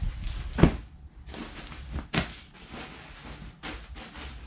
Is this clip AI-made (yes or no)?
no